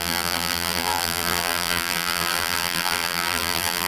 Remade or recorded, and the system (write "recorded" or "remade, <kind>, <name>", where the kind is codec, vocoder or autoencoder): remade, vocoder, BigVGAN v2